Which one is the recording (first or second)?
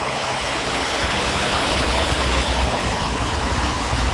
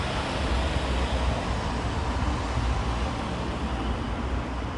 second